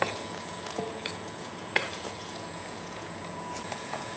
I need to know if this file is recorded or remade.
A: remade